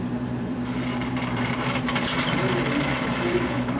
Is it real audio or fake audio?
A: fake